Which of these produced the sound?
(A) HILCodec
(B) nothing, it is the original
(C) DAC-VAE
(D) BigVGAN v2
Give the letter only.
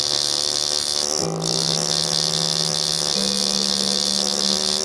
B